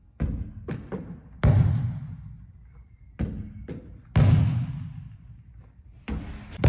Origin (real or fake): real